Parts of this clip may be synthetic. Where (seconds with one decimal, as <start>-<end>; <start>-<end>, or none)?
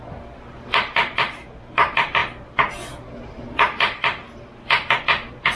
none